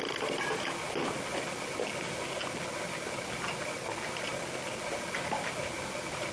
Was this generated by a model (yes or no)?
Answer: no